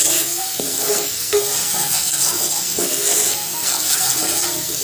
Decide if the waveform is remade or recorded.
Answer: remade